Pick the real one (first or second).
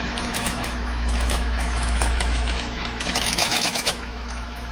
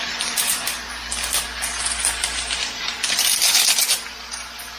second